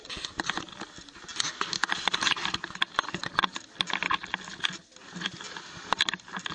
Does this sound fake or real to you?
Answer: real